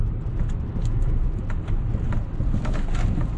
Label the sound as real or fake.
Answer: real